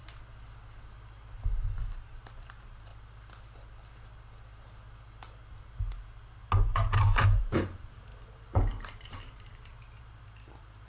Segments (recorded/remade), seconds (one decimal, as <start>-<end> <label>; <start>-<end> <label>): 0.0-1.9 recorded; 1.9-2.9 remade; 2.9-7.4 recorded; 7.4-10.9 remade